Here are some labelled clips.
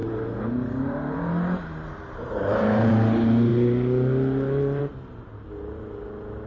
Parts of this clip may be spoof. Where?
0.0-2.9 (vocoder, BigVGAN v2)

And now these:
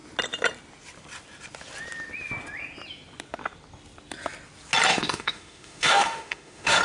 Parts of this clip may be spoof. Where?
4.9-6.8 (autoencoder, DAC-VAE)

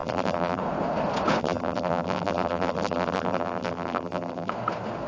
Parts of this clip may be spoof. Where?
0.0-0.6 (vocoder, BigVGAN v2); 1.4-4.5

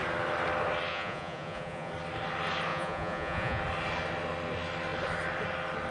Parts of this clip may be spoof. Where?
0.9-1.9 (vocoder, Vocos); 2.7-3.6